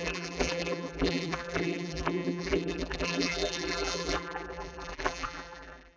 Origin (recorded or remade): remade